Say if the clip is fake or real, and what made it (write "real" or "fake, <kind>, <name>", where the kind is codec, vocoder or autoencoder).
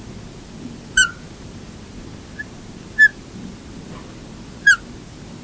real